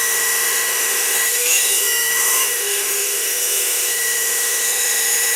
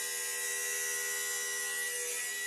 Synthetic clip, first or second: first